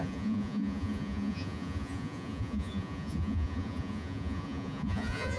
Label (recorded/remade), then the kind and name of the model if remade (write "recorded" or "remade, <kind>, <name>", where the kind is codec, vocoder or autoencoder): remade, vocoder, Vocos